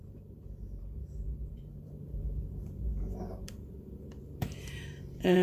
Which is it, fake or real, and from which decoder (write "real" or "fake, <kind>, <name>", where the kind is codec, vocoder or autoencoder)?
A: fake, vocoder, BigVGAN v2